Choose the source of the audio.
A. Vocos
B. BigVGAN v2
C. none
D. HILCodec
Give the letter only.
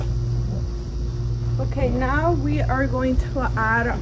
C